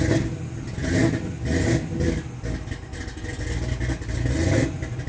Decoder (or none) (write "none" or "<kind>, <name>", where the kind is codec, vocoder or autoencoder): none